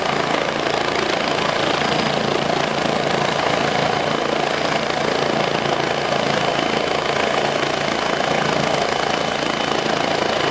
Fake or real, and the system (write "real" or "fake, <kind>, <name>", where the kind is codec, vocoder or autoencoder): real